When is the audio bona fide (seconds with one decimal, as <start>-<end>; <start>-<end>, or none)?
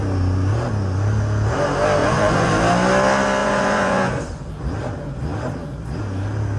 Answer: 0.0-2.0; 2.5-3.4; 4.5-6.6